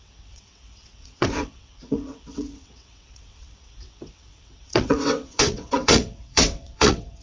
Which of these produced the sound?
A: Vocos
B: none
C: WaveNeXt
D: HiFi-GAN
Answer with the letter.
C